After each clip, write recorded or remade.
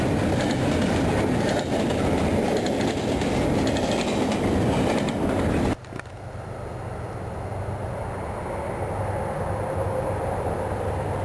recorded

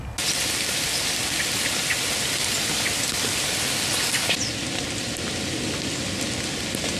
recorded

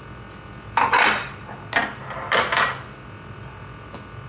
recorded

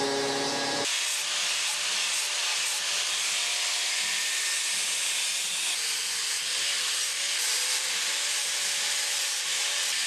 recorded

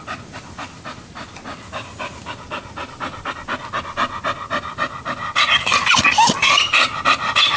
recorded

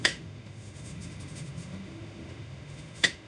remade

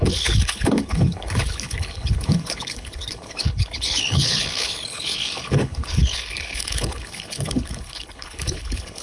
remade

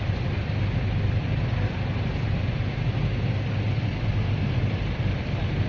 recorded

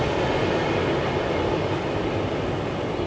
recorded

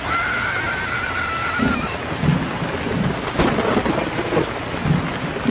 recorded